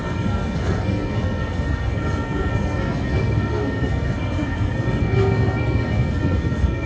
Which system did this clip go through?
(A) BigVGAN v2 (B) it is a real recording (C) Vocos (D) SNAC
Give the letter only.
D